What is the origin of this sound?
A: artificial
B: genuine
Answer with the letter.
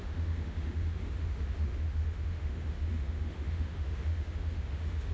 A